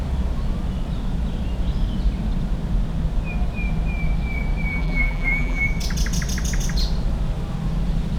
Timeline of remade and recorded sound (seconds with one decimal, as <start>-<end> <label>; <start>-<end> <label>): 0.0-4.7 recorded; 4.7-5.6 remade; 5.6-8.2 recorded